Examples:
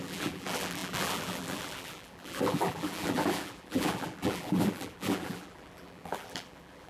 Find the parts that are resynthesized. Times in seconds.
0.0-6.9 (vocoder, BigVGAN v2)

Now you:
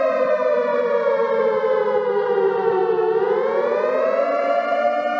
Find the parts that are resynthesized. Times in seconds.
0.0-2.8 (vocoder, BigVGAN v2); 4.2-5.2